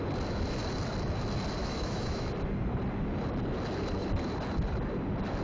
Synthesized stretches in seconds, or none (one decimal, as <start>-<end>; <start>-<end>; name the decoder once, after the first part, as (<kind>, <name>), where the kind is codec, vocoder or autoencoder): 1.6-2.3 (autoencoder, DAC-VAE)

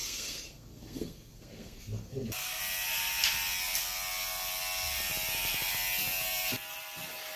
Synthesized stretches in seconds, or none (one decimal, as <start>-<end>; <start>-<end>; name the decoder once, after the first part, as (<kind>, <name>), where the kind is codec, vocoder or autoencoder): 0.0-2.6 (codec, SNAC)

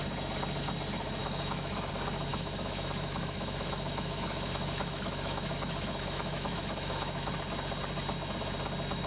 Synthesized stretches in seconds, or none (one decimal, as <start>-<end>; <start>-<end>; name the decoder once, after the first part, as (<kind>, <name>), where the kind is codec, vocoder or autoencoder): 1.2-1.9 (autoencoder, DAC-VAE); 2.3-7.3

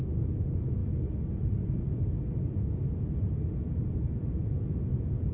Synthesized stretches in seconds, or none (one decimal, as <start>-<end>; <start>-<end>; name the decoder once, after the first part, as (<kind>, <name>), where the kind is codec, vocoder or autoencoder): 0.0-0.8 (vocoder, Vocos); 4.0-5.3